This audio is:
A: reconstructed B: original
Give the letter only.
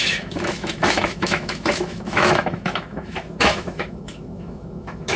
A